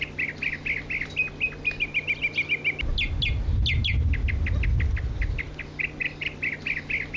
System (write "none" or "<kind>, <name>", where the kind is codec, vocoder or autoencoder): none